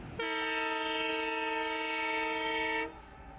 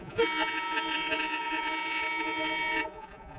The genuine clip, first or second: first